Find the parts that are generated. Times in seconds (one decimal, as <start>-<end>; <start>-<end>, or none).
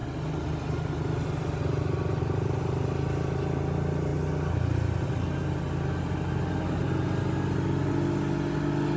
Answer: none